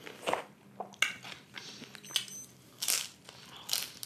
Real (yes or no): yes